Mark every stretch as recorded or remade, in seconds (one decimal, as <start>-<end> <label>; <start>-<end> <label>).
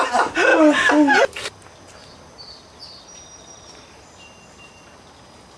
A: 0.0-5.6 recorded